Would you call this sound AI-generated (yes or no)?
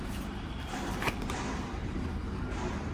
yes